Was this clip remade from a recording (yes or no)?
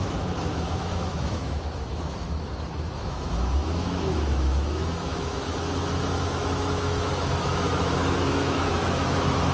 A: yes